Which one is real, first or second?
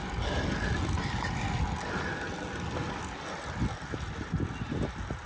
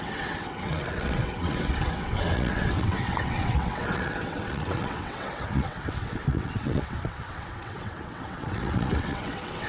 first